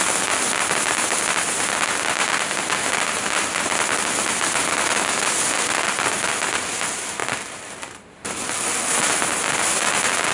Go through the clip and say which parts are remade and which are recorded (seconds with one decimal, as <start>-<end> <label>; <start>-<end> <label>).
0.0-7.2 recorded; 7.2-7.9 remade; 7.9-10.3 recorded

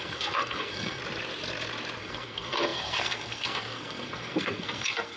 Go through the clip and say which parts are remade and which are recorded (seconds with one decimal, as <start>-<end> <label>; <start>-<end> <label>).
0.0-1.0 remade; 1.0-2.0 recorded; 2.0-5.2 remade

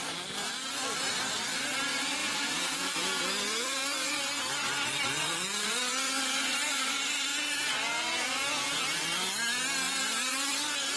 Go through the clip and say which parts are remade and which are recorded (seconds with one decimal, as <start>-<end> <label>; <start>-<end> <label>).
0.0-2.2 recorded; 2.2-4.1 remade; 4.1-7.3 recorded; 7.3-8.8 remade; 8.8-11.0 recorded